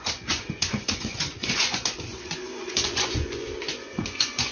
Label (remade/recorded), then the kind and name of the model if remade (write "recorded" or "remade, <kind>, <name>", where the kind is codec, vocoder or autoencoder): remade, vocoder, Vocos